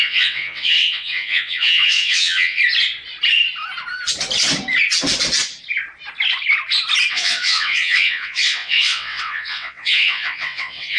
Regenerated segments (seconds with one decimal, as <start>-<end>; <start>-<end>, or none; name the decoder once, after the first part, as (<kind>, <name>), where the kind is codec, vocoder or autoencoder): 0.0-2.6 (vocoder, WaveNeXt); 7.1-11.0